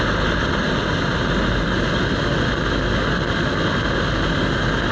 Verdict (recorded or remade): recorded